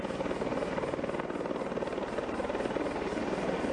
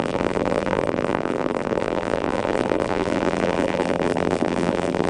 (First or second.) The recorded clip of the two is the first